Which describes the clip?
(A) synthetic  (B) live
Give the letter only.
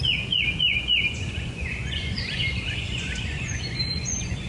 A